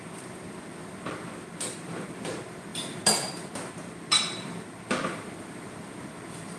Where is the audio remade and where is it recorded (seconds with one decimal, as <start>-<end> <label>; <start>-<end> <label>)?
0.0-6.6 recorded